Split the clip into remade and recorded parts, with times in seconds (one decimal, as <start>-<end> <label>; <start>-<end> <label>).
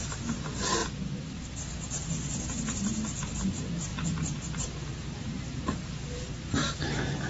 0.0-7.3 recorded